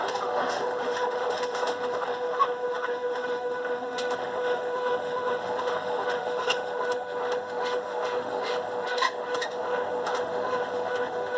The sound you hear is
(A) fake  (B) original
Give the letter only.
A